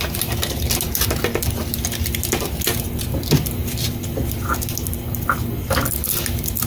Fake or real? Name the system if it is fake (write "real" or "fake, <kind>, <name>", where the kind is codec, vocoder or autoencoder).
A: real